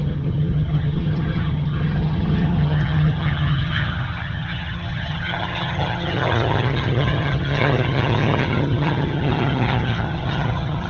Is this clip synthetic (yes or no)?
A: yes